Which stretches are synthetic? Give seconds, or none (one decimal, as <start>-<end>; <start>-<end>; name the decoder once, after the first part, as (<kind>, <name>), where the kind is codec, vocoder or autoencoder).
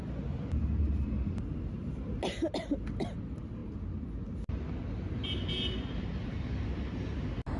none